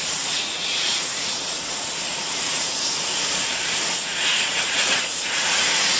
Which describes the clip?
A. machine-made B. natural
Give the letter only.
A